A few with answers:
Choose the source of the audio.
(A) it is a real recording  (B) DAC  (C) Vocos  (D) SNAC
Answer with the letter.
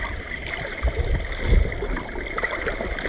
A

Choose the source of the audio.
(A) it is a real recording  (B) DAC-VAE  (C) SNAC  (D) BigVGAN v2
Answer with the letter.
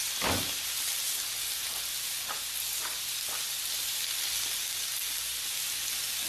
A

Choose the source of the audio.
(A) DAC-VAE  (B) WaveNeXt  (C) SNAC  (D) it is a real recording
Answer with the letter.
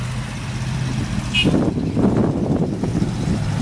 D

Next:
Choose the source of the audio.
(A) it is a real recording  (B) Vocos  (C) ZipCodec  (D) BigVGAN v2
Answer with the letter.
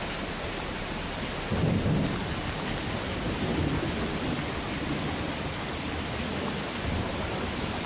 A